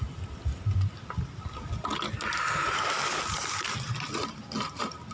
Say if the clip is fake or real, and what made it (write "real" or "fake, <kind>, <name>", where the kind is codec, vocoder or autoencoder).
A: real